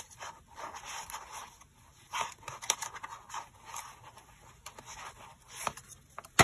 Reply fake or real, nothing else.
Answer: real